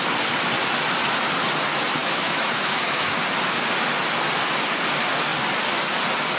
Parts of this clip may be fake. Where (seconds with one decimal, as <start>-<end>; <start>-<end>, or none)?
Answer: 2.0-3.2